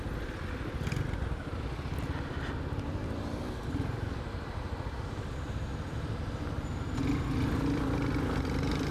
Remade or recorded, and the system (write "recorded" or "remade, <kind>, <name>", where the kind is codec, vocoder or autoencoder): recorded